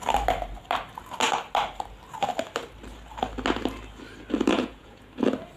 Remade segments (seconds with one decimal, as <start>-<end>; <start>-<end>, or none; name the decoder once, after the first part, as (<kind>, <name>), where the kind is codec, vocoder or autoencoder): 4.5-5.0 (vocoder, Vocos)